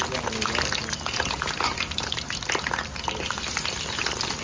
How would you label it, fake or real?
real